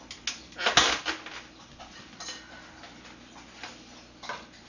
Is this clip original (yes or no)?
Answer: yes